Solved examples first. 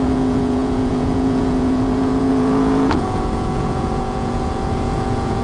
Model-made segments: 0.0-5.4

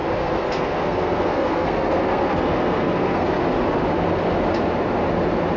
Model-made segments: 0.0-3.4